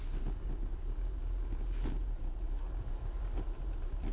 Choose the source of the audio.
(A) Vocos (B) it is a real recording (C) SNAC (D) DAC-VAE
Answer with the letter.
B